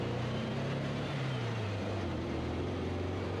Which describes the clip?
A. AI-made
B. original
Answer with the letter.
A